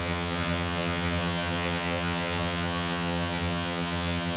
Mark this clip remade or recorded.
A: remade